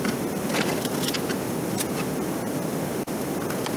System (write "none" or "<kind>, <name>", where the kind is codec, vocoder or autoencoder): none